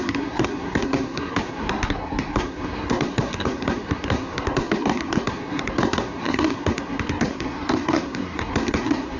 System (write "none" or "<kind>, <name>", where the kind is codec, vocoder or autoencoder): codec, SNAC